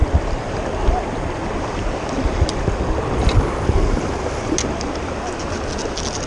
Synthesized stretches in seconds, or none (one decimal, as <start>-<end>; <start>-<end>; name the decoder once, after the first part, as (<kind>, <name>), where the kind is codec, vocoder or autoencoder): none